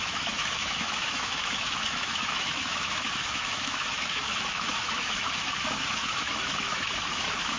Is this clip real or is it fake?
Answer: fake